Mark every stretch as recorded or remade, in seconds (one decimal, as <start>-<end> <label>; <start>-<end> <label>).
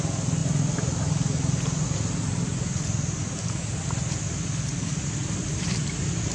0.0-5.2 recorded; 5.2-5.8 remade; 5.8-6.3 recorded